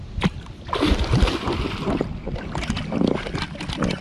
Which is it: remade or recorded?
recorded